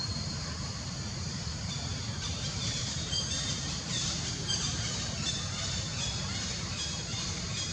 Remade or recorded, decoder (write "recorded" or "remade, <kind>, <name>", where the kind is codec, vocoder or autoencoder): remade, vocoder, BigVGAN v2